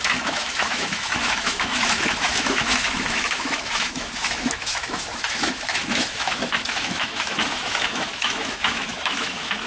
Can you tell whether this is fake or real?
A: fake